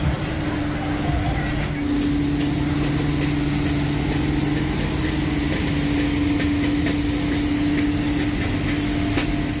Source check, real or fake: real